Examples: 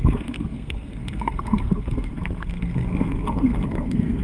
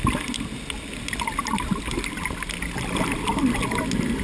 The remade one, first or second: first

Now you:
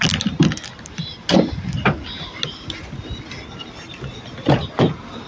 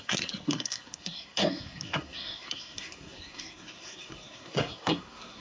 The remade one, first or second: second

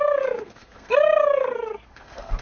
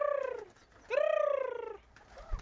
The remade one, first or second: first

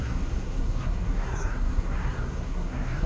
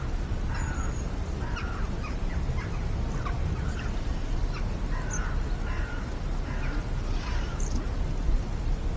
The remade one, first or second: first